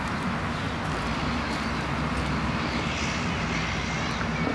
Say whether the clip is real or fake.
real